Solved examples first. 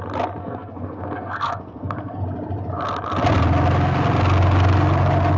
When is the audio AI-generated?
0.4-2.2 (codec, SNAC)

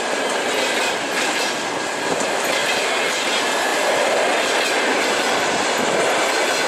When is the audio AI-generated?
none

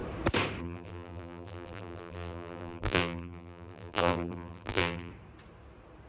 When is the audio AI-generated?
0.6-5.1 (vocoder, BigVGAN v2)